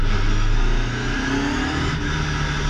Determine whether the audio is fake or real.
real